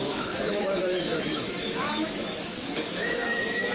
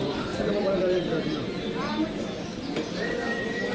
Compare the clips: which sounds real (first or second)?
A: second